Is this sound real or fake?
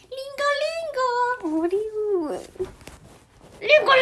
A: real